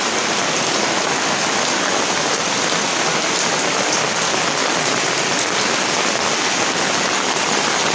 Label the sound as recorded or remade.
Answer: recorded